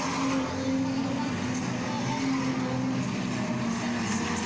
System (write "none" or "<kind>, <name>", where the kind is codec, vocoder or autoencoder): none